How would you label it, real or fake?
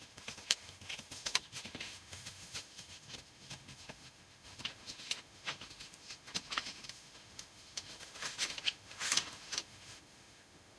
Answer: fake